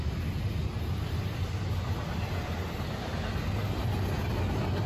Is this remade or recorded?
recorded